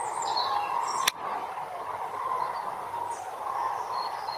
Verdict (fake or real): real